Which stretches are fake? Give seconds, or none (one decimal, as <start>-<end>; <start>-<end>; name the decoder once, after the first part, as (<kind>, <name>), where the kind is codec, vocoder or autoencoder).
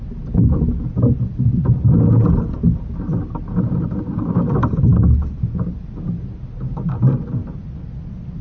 none